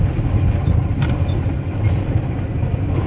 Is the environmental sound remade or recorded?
recorded